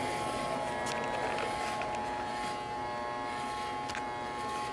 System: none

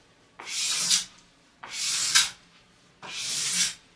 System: vocoder, BigVGAN v2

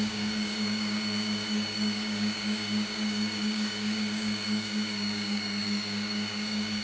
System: codec, DAC